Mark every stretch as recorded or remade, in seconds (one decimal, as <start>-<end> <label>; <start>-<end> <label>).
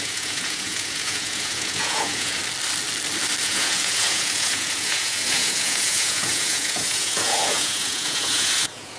0.0-2.4 remade; 2.4-3.4 recorded; 3.4-9.0 remade